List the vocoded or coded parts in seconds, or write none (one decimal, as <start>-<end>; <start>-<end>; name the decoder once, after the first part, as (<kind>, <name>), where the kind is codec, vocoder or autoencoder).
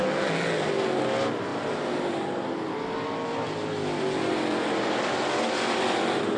none